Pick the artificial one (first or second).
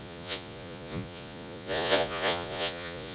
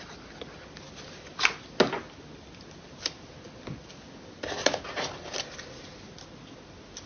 first